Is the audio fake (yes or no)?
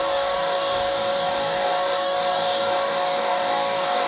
yes